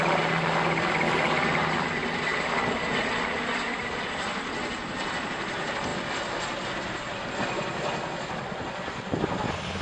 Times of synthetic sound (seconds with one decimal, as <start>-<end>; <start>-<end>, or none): none